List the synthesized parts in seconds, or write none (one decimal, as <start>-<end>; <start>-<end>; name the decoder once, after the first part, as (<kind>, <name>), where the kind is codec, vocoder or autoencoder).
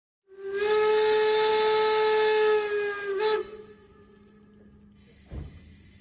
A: none